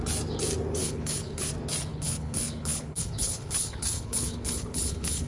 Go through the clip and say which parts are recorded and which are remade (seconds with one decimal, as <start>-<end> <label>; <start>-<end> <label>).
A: 0.0-0.8 recorded; 0.8-1.5 remade; 1.5-1.9 recorded; 1.9-5.3 remade